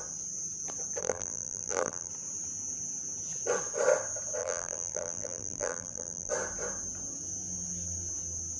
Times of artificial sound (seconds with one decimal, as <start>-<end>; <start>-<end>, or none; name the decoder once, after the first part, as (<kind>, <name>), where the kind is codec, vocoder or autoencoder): 1.0-2.1 (vocoder, BigVGAN v2); 4.4-6.3